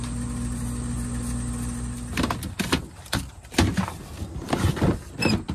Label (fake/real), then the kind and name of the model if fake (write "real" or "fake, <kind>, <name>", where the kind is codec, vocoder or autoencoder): real